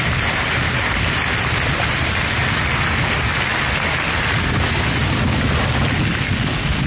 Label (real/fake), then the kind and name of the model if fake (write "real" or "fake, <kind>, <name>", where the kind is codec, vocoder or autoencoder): real